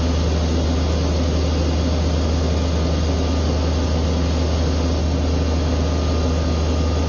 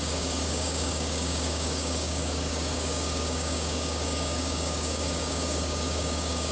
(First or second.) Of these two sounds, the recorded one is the first